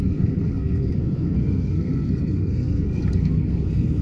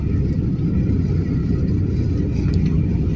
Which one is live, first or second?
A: second